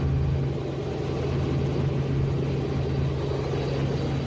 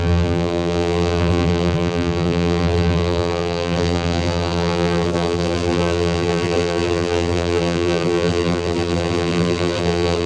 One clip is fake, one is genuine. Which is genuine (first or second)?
first